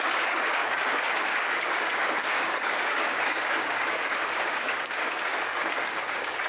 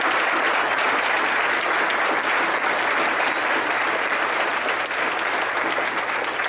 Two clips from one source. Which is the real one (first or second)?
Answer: second